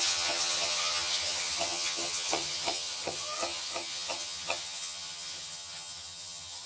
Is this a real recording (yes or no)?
no